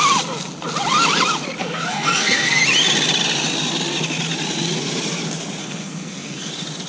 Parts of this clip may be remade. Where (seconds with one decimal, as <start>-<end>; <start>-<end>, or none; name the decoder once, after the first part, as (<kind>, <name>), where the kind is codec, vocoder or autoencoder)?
1.6-2.6 (codec, SNAC); 5.6-6.5